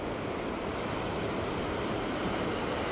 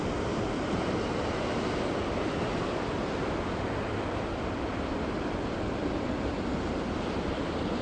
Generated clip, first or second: second